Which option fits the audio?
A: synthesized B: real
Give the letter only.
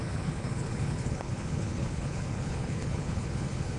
A